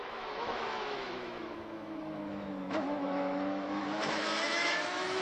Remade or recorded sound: remade